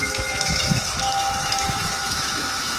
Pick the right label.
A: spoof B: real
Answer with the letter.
A